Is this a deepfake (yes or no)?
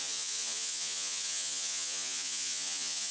yes